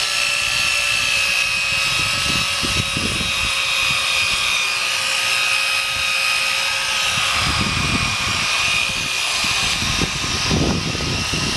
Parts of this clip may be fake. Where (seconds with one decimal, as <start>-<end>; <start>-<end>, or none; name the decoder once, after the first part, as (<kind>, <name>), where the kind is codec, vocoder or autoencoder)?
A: none